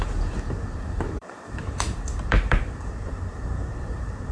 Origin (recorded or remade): remade